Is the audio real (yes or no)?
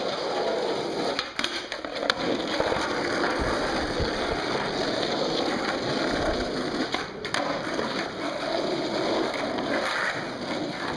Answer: yes